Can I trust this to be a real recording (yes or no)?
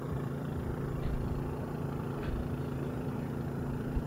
no